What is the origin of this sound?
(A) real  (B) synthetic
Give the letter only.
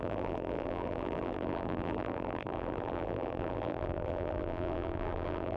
B